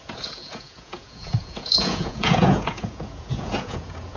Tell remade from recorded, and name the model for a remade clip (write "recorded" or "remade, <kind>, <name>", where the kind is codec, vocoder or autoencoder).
remade, vocoder, Vocos